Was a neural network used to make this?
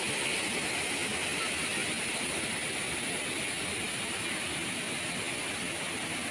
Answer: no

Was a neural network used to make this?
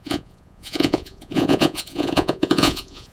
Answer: yes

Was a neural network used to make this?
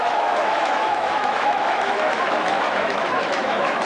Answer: yes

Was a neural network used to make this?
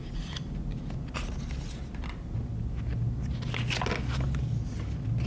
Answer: no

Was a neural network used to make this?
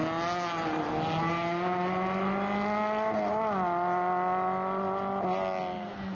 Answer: no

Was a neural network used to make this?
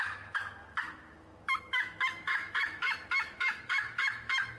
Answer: yes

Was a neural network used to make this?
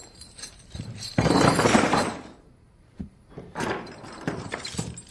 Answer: yes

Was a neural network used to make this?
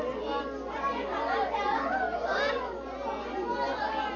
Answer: no